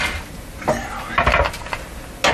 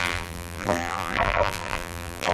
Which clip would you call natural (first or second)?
first